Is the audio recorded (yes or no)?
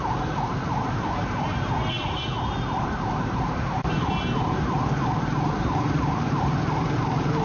yes